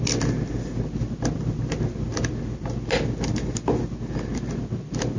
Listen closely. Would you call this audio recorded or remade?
recorded